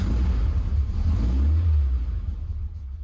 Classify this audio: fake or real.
real